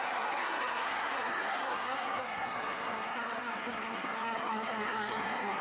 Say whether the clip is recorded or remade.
remade